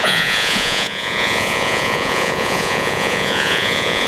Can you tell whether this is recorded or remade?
remade